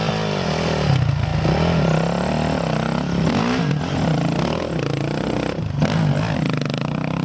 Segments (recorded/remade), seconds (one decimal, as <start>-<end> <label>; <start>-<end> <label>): 0.0-7.2 recorded

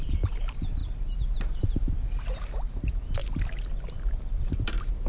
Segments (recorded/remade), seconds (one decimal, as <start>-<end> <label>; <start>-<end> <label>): 0.0-0.8 remade; 0.8-1.4 recorded; 1.4-3.2 remade; 3.2-4.0 recorded; 4.0-5.1 remade

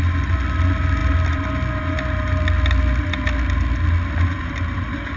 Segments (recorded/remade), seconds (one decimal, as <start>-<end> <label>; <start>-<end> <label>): 0.0-5.2 recorded

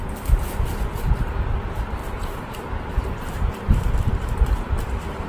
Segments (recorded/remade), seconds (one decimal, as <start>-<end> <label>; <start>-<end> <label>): 0.0-2.0 recorded; 2.0-5.3 remade

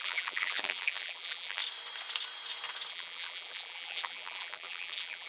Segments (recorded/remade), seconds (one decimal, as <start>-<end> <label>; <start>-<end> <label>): 0.0-1.6 remade; 1.6-2.9 recorded; 2.9-5.3 remade